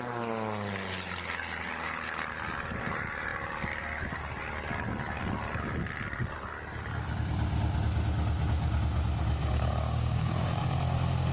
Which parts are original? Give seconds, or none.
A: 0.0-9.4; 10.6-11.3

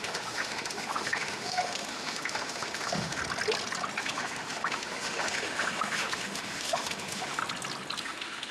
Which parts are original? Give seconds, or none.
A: 3.2-4.0; 7.4-8.0

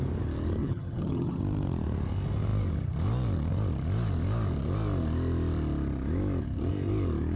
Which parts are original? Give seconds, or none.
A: 0.0-0.6; 1.4-7.4

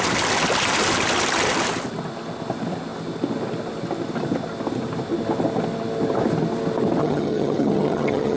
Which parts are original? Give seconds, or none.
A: 0.0-7.0

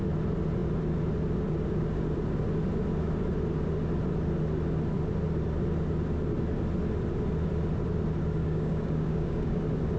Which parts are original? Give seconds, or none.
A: 0.0-8.4; 9.6-10.0